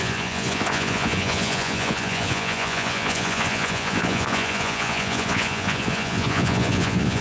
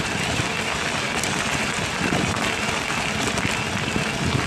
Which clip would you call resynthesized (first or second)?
first